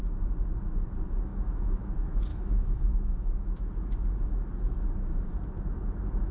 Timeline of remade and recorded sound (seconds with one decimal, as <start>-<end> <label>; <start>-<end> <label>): 0.0-1.3 recorded; 1.3-1.9 remade; 1.9-2.3 recorded; 2.3-3.7 remade; 3.7-6.3 recorded